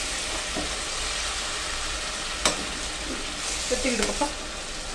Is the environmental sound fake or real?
real